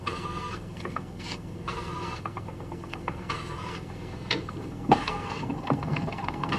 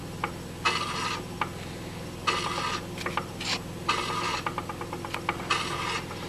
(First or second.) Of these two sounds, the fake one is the first